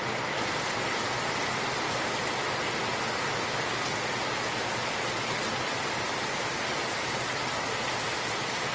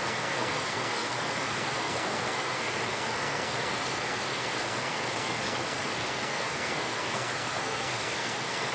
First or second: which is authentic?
first